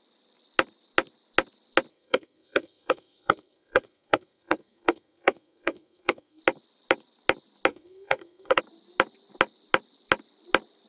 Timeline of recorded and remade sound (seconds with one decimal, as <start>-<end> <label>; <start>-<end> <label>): 0.0-1.9 recorded; 1.9-6.4 remade; 6.4-7.7 recorded; 7.7-8.6 remade; 8.6-10.9 recorded